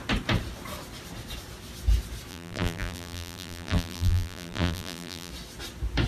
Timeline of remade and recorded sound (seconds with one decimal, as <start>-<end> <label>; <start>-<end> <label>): 0.0-2.3 recorded; 2.3-5.3 remade; 5.3-6.1 recorded